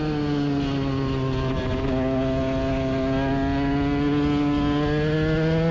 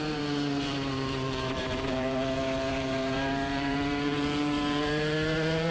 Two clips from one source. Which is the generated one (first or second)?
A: second